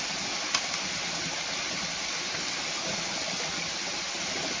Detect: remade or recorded recorded